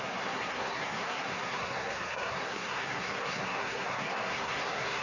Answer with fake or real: fake